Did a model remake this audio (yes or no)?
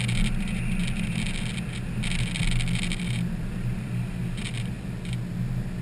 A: no